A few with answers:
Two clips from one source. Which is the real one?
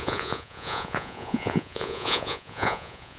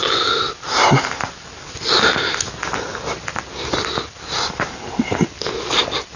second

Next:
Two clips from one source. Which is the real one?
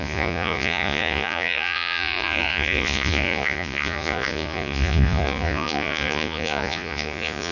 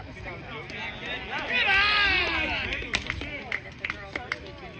second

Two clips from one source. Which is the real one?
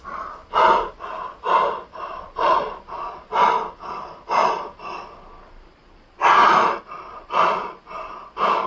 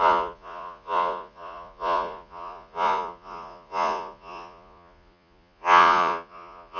first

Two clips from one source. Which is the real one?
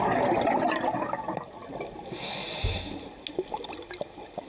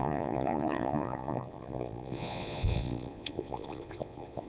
first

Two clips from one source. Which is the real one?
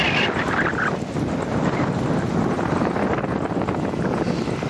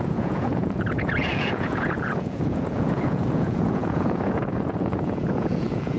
first